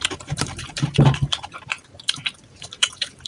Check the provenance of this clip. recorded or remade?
remade